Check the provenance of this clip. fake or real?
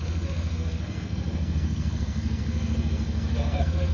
fake